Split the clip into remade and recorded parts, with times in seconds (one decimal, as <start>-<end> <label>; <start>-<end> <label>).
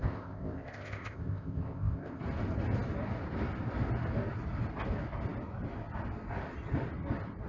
0.0-2.2 remade; 2.2-7.5 recorded